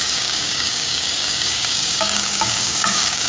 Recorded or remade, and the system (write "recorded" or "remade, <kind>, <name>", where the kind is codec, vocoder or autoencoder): remade, codec, DAC